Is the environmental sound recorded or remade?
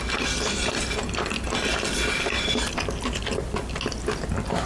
recorded